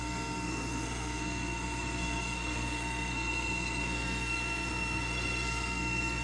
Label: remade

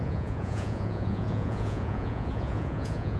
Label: remade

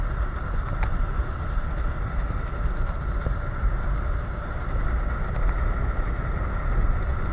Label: recorded